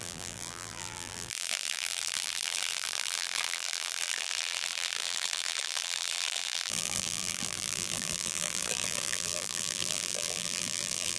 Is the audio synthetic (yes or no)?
yes